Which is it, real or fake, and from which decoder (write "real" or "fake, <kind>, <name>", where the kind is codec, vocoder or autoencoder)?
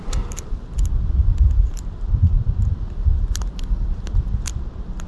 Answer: real